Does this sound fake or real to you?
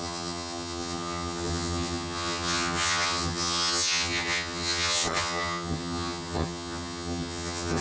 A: fake